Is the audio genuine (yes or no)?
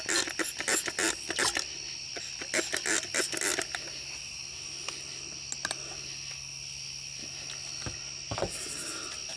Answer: yes